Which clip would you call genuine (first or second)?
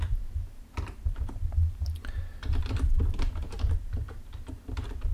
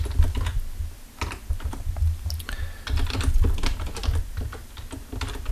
second